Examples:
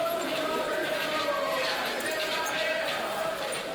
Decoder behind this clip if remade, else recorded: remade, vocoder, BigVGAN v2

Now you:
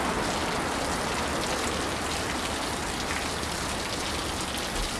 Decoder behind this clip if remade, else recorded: recorded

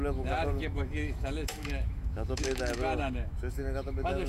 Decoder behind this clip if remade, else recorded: remade, autoencoder, DAC-VAE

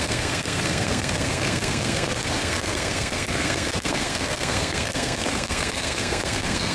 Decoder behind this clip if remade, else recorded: remade, codec, SNAC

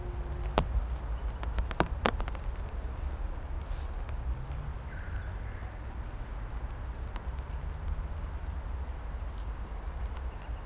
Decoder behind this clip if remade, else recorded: recorded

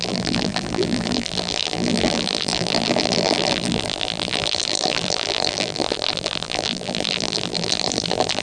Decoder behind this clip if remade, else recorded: remade, vocoder, BigVGAN v2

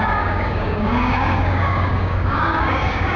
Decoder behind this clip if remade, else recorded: remade, codec, DAC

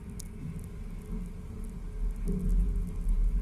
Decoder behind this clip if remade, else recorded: recorded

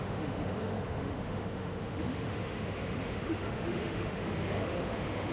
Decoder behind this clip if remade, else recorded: remade, autoencoder, DAC-VAE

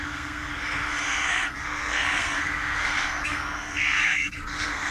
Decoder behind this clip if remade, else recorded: remade, codec, SNAC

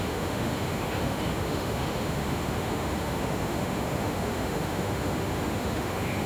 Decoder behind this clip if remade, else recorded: remade, autoencoder, DAC-VAE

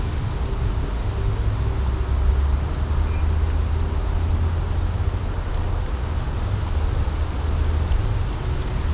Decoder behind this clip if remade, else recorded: recorded